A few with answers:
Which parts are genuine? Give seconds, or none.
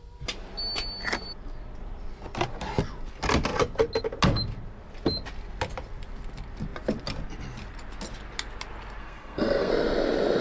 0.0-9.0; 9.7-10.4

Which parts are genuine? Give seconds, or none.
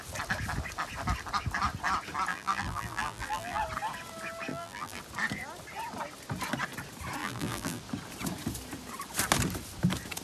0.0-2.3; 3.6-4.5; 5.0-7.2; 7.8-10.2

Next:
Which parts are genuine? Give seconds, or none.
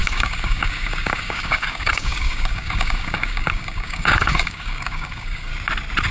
5.5-6.1